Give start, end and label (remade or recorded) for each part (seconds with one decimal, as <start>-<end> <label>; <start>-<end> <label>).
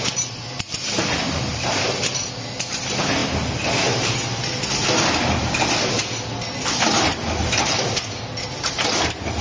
0.0-9.4 recorded